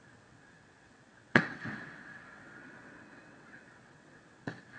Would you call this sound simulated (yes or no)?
yes